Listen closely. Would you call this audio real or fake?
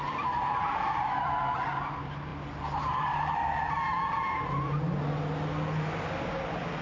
real